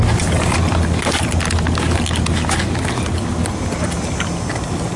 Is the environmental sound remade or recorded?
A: recorded